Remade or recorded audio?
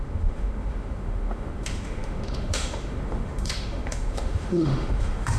remade